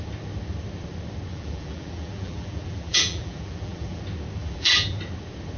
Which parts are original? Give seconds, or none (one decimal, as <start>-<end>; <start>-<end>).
0.0-1.3; 4.0-4.4; 5.0-5.6